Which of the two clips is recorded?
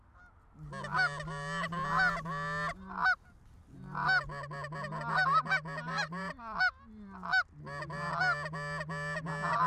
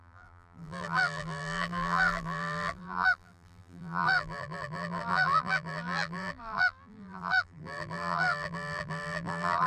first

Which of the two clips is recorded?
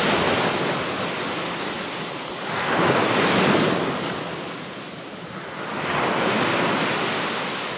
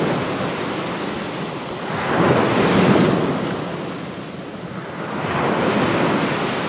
second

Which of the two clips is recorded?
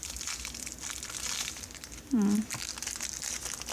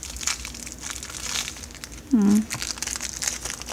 second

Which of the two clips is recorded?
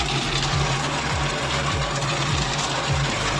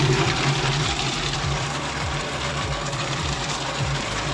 first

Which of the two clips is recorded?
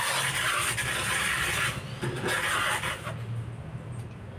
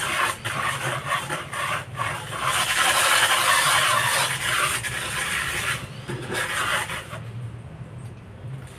first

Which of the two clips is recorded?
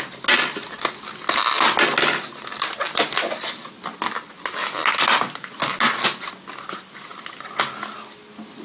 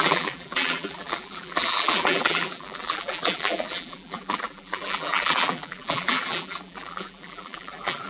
first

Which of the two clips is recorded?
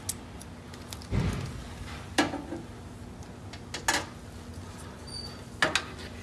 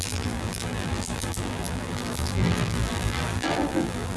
first